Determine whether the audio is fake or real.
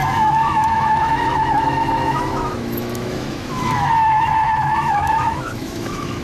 fake